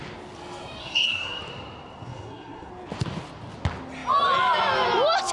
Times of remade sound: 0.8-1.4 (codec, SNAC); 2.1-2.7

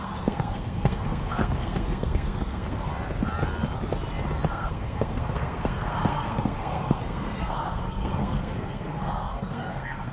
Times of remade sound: 0.0-2.9 (codec, SNAC); 4.5-10.1

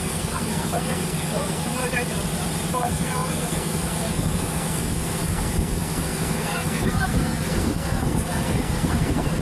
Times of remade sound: 0.0-1.8 (codec, SNAC); 2.7-9.4